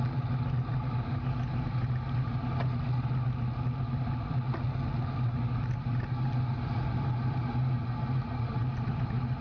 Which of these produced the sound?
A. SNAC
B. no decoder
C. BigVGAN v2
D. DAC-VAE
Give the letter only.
B